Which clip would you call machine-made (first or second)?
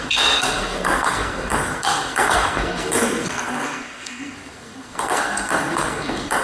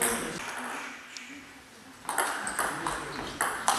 first